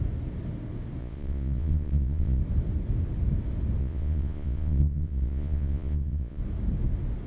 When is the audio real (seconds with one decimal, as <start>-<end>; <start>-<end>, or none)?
0.0-1.0; 2.4-3.8; 6.4-7.3